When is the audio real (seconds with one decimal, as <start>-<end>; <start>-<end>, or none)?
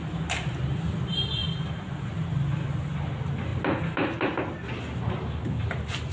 0.0-6.1